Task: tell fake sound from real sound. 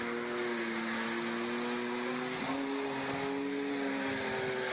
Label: real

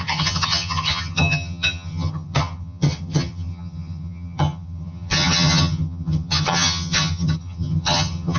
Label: fake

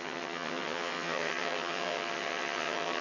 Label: fake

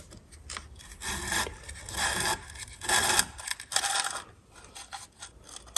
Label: real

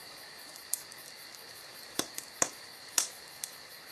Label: fake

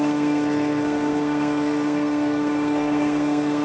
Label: fake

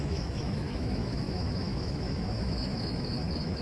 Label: fake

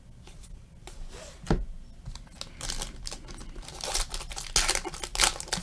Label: real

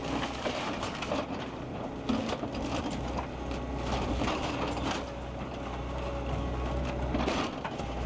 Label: real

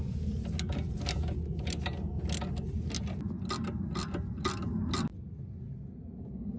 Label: real